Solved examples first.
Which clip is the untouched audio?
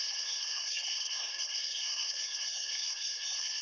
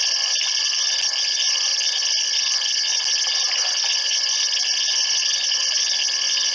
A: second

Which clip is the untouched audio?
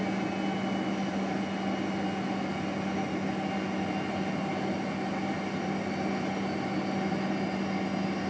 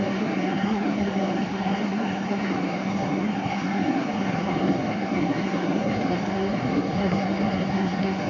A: first